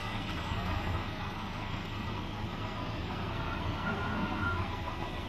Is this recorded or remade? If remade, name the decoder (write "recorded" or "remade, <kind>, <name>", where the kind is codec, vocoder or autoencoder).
remade, codec, SNAC